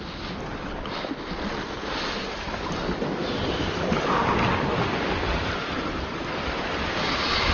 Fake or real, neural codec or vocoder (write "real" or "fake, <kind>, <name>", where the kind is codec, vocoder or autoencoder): real